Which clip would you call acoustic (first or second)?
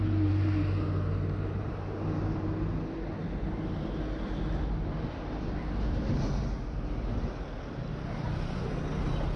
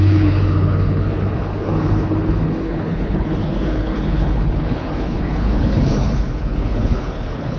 first